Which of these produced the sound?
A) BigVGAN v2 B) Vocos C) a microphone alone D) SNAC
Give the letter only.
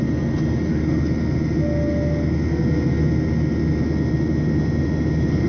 C